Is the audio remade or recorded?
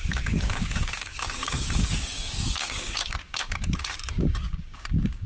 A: remade